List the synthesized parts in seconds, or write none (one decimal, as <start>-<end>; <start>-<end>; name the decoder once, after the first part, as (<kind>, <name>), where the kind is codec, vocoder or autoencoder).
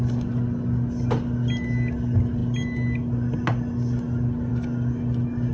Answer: none